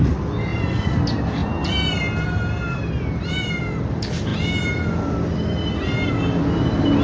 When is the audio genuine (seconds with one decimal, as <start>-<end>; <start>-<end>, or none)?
0.0-0.5; 1.0-7.0

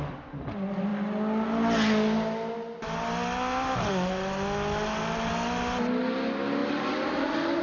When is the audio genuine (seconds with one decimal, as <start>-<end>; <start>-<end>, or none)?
0.0-7.6

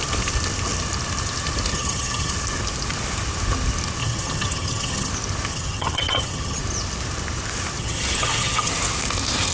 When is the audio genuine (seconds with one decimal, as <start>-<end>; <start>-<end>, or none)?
0.0-1.7; 2.3-4.0; 5.1-5.5; 6.6-7.8; 8.7-9.5

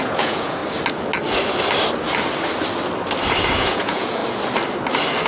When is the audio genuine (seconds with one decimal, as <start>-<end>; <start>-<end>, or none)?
0.6-3.6; 4.2-5.3

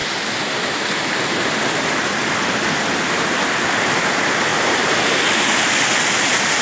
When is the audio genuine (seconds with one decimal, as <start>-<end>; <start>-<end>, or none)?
0.0-4.5; 5.6-6.6

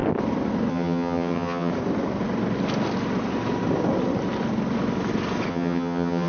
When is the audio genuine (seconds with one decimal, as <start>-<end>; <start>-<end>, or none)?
0.0-0.7; 1.7-5.5

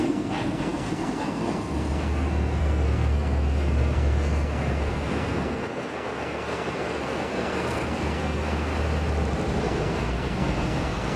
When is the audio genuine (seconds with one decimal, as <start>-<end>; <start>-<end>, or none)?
8.7-9.6